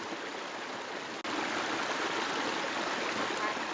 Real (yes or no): yes